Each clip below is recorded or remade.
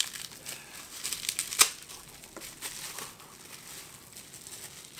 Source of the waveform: recorded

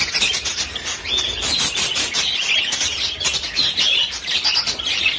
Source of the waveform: recorded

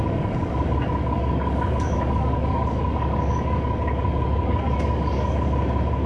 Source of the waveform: remade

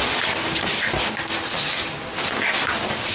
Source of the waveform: recorded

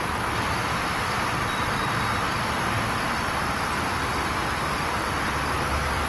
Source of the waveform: recorded